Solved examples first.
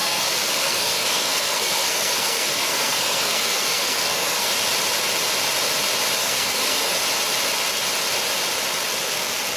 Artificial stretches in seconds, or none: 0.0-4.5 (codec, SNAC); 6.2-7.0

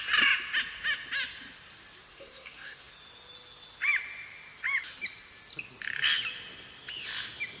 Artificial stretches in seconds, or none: 2.1-2.9 (codec, SNAC)

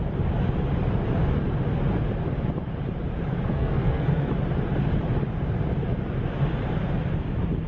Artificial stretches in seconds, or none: 3.5-4.3 (codec, SNAC)

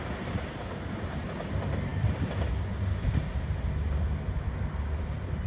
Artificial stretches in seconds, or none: none

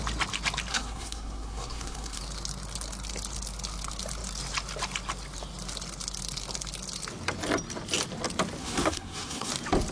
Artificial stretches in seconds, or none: 0.7-2.2 (codec, SNAC); 8.6-9.5

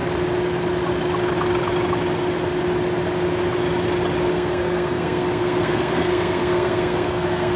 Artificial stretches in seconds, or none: 4.3-7.6 (codec, SNAC)

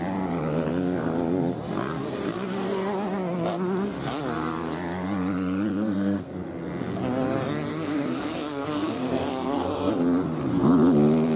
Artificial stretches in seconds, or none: 5.7-6.3 (codec, SNAC); 7.7-9.9

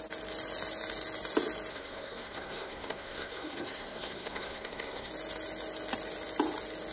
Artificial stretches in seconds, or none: 1.7-5.1 (codec, SNAC)